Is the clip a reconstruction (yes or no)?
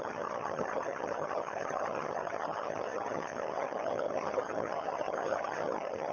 yes